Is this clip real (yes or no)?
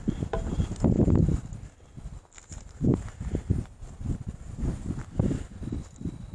yes